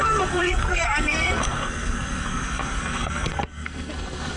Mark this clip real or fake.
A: fake